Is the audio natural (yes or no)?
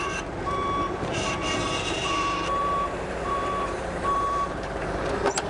no